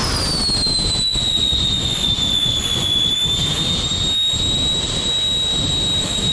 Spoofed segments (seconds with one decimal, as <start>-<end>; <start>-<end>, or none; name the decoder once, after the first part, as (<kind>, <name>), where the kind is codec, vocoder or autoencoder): 1.1-3.1 (vocoder, Vocos)